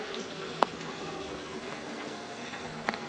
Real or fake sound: fake